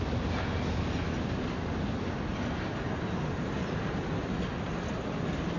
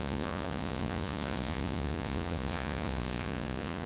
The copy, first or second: second